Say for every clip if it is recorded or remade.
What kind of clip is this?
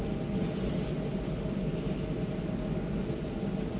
recorded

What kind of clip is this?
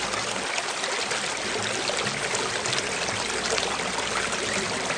recorded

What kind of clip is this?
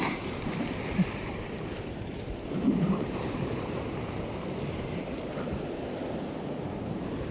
remade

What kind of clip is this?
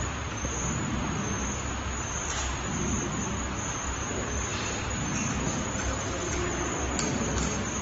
recorded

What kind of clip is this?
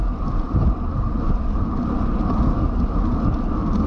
recorded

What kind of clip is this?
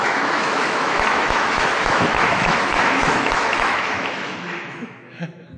remade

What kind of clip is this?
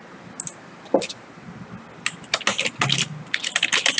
recorded